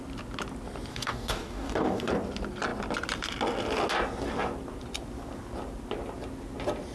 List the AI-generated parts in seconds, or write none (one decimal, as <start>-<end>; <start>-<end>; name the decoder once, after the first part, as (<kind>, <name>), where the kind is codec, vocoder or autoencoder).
0.9-2.1 (codec, DAC)